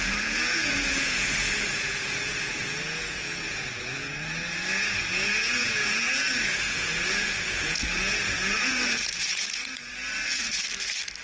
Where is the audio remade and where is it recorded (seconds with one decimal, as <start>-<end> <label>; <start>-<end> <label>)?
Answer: 0.0-9.9 remade; 9.9-11.2 recorded